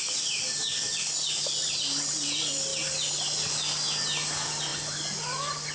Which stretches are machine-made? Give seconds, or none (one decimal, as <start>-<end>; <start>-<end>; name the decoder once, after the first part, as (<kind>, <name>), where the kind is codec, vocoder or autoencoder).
none